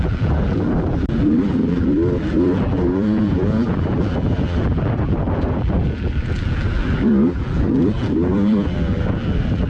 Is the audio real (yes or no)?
no